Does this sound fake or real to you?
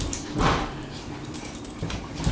real